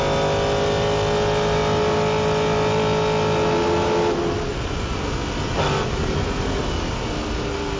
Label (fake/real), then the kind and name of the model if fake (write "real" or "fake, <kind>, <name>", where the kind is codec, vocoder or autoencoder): real